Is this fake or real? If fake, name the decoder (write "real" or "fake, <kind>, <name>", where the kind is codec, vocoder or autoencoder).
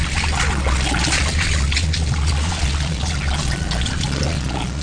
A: fake, vocoder, Vocos